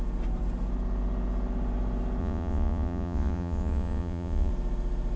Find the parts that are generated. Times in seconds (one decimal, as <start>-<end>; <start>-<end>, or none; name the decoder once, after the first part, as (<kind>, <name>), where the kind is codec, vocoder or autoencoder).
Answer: 2.2-4.5 (vocoder, Vocos)